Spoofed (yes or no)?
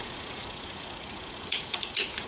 yes